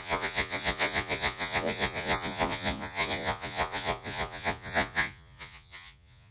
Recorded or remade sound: remade